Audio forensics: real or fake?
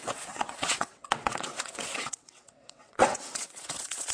fake